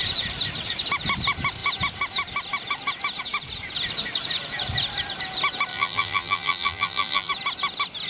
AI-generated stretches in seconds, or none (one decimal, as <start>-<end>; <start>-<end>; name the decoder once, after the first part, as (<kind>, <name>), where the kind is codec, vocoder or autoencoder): 5.7-7.3 (vocoder, BigVGAN v2)